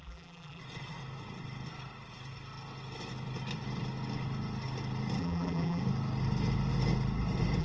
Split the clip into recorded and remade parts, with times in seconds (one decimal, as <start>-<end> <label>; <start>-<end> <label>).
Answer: 0.0-0.6 remade; 0.6-5.2 recorded; 5.2-5.8 remade; 5.8-7.6 recorded